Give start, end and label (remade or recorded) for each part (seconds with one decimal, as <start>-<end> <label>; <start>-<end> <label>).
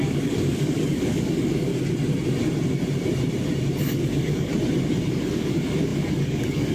0.0-1.7 remade; 1.7-3.9 recorded; 3.9-4.5 remade; 4.5-5.1 recorded; 5.1-6.7 remade